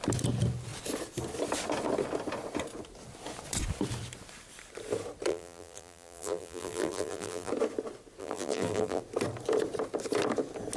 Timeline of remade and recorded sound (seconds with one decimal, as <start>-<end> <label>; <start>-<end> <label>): 0.0-5.3 recorded; 5.3-7.5 remade; 7.5-8.2 recorded; 8.2-9.0 remade; 9.0-10.8 recorded